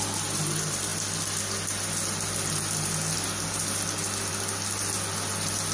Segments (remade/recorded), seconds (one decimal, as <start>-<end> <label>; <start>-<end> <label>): 0.0-5.7 recorded